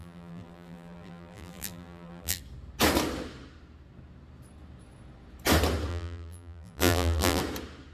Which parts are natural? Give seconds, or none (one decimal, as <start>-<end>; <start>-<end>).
2.4-5.9; 7.4-7.9